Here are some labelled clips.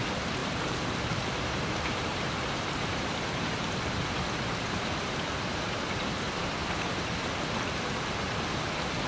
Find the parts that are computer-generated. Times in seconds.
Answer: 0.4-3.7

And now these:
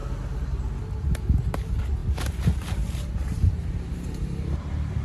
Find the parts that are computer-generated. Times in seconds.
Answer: 1.5-5.0

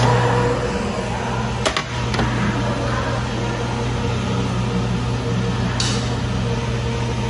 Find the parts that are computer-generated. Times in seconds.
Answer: none

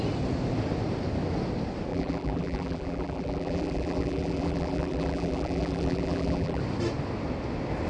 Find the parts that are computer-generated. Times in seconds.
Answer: 1.9-6.6